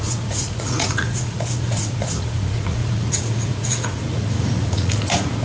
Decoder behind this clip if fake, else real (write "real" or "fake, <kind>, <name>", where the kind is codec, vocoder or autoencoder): fake, vocoder, Vocos